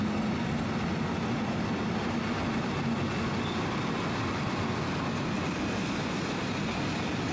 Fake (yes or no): no